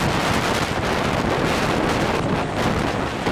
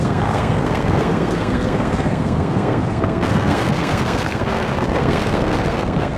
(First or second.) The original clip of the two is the first